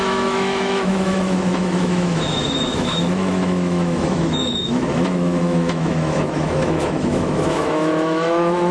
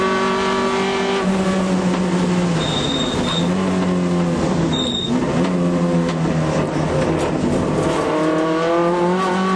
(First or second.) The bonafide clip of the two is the second